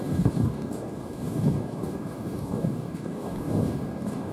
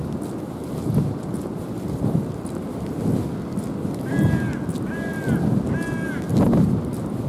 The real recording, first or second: second